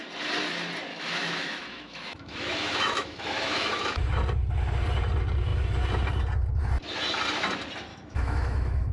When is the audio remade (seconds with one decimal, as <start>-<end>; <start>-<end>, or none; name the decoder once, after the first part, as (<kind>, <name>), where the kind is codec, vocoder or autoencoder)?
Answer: 0.9-4.0 (autoencoder, DAC-VAE); 7.9-8.9